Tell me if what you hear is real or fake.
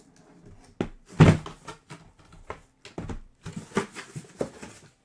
real